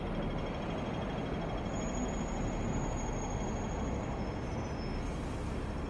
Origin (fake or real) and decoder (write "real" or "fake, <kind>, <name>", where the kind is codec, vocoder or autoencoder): real